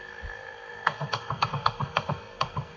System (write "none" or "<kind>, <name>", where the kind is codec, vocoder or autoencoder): codec, SNAC